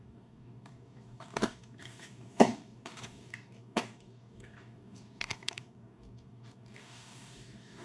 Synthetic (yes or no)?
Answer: yes